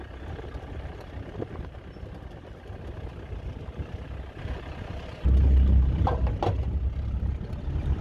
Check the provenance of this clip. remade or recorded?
recorded